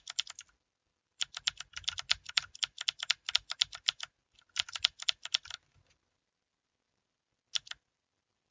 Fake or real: real